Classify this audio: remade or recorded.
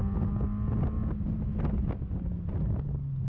recorded